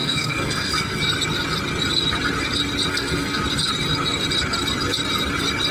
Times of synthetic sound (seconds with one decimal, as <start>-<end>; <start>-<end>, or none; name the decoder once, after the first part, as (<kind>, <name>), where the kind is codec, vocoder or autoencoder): 0.0-1.0 (codec, SNAC); 2.9-3.4